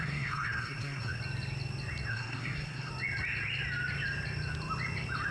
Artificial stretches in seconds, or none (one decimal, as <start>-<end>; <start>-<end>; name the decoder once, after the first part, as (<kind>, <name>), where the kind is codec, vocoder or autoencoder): 0.0-1.2 (codec, SNAC); 2.1-2.9